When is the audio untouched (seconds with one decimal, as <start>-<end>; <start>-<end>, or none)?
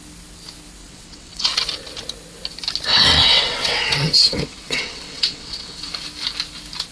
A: 0.0-0.8; 1.5-2.9; 5.9-6.9